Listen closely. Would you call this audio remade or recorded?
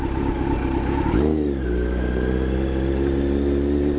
recorded